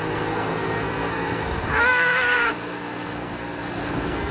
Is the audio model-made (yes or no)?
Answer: yes